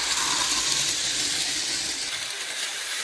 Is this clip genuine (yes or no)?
yes